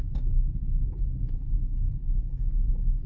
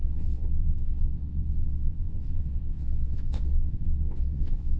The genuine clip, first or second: first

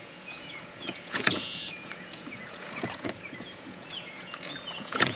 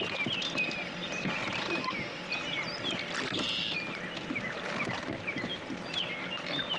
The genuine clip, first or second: second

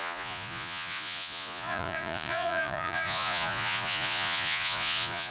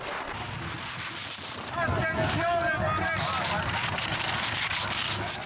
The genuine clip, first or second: second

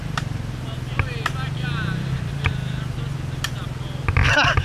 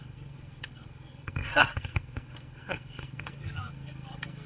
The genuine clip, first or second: first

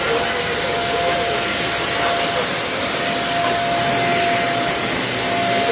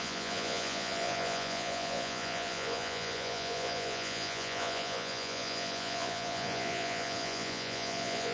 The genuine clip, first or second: first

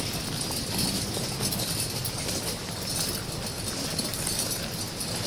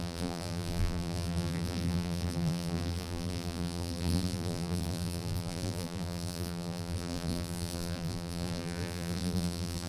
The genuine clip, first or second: first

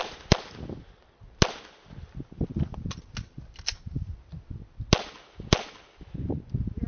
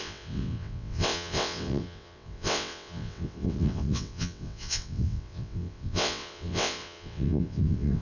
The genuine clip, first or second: first